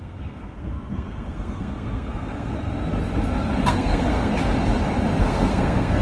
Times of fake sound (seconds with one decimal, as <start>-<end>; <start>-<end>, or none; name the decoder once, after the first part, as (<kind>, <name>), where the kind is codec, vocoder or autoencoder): 0.0-2.6 (codec, SNAC); 3.6-4.3; 5.2-6.0